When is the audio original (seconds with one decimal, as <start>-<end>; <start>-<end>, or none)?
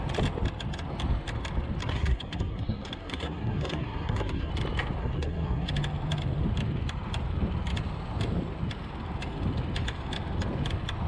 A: 0.0-1.8; 4.5-5.0; 5.7-11.1